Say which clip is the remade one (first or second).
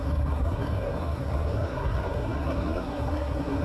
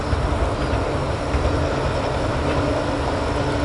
first